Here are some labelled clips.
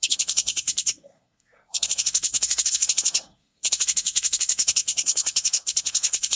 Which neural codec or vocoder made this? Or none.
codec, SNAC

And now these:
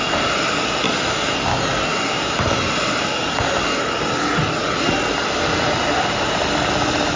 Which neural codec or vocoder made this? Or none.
none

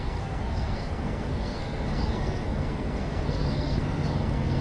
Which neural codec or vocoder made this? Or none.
codec, SNAC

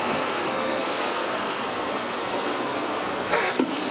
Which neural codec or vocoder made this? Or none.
codec, SNAC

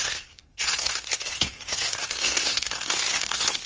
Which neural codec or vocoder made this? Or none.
codec, SNAC